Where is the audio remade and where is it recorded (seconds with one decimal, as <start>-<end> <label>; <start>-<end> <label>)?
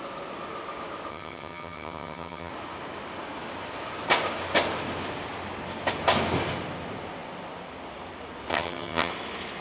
0.0-1.1 recorded; 1.1-2.5 remade; 2.5-8.5 recorded; 8.5-9.1 remade; 9.1-9.6 recorded